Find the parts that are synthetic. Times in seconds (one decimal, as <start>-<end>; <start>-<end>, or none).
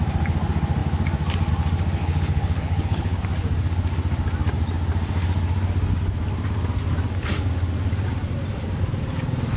2.0-3.2